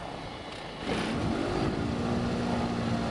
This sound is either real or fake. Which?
real